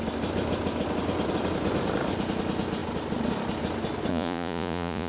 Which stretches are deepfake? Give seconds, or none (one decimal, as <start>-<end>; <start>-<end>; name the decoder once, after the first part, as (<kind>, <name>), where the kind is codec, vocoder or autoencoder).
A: 4.1-5.1 (vocoder, Vocos)